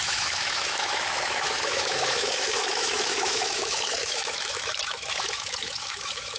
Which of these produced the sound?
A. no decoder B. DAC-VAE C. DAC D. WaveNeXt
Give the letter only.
B